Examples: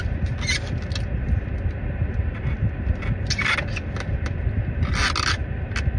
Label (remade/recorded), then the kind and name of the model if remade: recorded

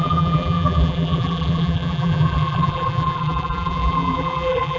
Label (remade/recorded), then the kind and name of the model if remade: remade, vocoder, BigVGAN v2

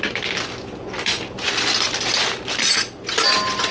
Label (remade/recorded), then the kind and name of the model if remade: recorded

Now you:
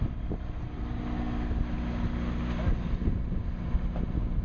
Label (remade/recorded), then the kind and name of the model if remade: recorded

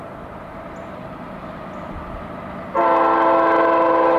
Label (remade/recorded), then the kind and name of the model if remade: recorded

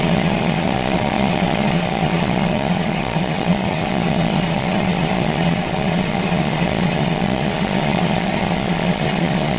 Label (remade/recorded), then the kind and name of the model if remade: remade, vocoder, Vocos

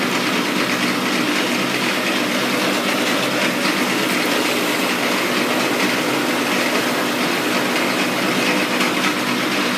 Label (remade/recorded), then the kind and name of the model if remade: recorded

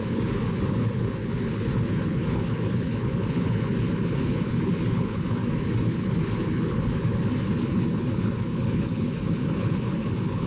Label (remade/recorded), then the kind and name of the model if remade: remade, codec, HILCodec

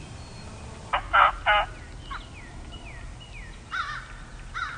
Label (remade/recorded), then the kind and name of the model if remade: recorded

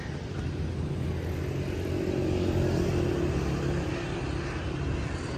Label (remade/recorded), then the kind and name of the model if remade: recorded